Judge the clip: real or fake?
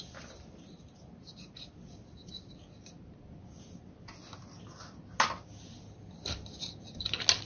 real